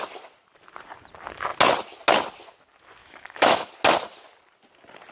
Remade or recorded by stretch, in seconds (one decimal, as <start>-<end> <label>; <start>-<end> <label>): 0.0-3.0 recorded; 3.0-3.7 remade; 3.7-5.1 recorded